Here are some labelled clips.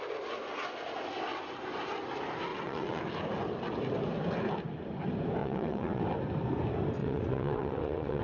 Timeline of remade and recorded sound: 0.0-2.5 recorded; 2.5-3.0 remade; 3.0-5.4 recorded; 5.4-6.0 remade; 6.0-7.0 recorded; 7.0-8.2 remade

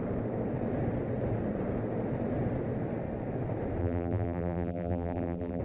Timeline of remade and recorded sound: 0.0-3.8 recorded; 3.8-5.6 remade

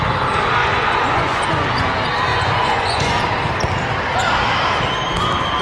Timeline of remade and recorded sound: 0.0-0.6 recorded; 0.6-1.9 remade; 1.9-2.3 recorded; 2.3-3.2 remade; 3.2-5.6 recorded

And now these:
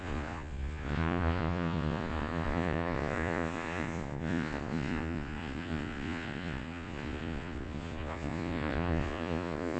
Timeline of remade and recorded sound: 0.0-9.8 remade

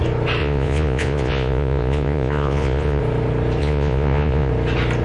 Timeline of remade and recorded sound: 0.0-0.4 recorded; 0.4-3.0 remade; 3.0-3.6 recorded; 3.6-4.5 remade; 4.5-5.0 recorded